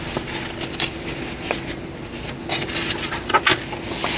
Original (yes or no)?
yes